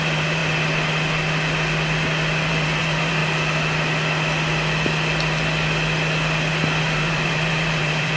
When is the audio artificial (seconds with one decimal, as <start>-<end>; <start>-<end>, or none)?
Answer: 0.0-0.4; 2.5-3.2; 6.8-8.2